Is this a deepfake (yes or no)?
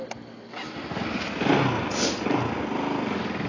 no